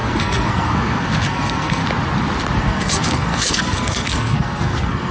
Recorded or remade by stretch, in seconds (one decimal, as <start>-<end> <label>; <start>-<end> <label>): 0.0-1.8 remade; 1.8-2.6 recorded; 2.6-5.1 remade